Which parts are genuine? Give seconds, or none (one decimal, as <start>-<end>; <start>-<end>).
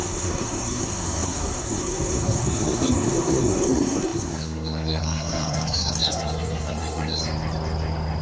7.2-8.2